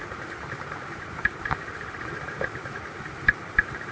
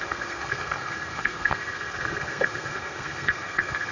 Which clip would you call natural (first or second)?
first